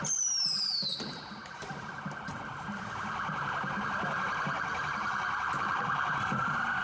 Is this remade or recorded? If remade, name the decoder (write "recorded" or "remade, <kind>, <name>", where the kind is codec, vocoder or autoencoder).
remade, vocoder, BigVGAN v2